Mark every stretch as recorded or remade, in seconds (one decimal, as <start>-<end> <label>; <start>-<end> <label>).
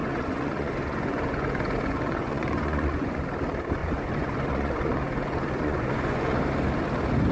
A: 0.0-3.2 remade; 3.2-3.8 recorded; 3.8-6.4 remade; 6.4-7.3 recorded